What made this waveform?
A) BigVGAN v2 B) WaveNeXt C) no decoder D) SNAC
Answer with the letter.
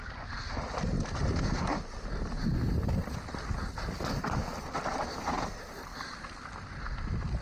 C